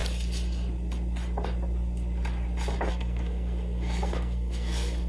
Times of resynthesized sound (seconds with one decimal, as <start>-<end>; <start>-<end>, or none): 2.9-5.1

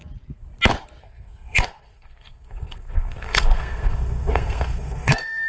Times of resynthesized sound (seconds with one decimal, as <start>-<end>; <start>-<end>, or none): 1.0-5.5

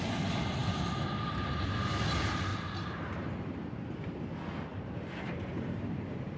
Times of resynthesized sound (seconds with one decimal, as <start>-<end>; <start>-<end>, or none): 2.5-4.1; 4.7-6.0